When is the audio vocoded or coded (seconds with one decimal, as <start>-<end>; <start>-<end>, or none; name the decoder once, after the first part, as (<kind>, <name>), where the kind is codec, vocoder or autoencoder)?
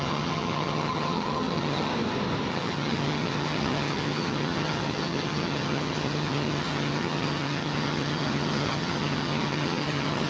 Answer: 0.0-1.9 (vocoder, HiFi-GAN); 2.5-10.3